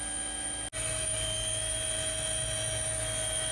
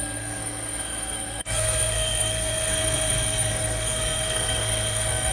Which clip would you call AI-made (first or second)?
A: second